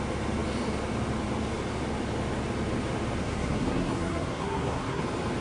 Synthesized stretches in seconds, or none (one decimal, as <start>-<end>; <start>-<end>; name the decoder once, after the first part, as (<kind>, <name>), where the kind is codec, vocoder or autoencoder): 3.2-5.0 (codec, SNAC)